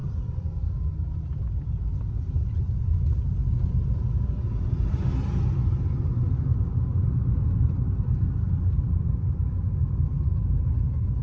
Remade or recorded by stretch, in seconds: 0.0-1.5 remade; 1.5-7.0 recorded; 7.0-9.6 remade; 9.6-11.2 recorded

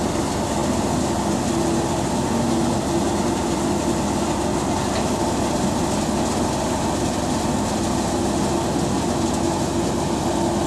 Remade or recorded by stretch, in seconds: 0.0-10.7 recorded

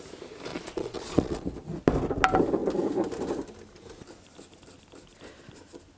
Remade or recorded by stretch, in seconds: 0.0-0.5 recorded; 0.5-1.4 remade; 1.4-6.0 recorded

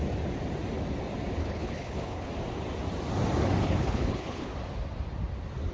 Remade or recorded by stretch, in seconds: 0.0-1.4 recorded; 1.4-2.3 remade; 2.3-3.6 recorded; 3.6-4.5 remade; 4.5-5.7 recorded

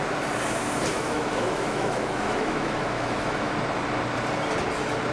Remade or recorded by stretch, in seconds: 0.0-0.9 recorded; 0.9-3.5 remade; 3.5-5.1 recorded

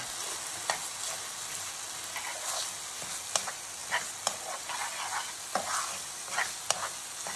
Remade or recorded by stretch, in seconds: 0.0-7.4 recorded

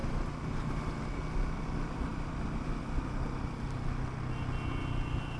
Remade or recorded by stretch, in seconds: 0.0-5.4 recorded